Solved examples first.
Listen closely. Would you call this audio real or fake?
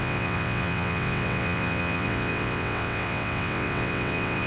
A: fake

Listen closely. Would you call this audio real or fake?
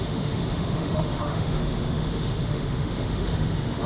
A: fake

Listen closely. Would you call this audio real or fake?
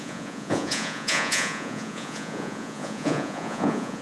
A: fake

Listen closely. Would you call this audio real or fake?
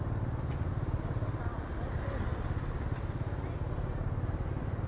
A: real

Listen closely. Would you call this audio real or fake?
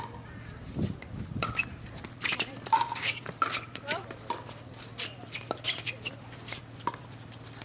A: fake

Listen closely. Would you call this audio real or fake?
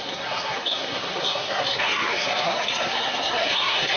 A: fake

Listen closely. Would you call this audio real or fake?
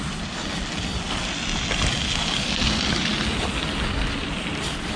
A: real